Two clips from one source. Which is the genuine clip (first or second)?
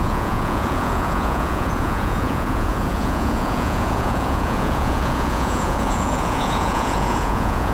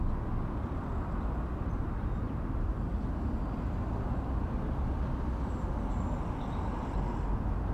second